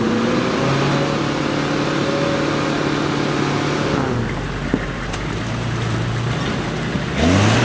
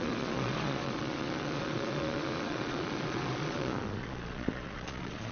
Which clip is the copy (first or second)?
second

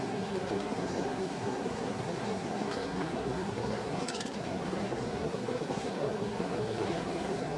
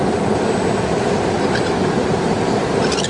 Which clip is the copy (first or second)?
first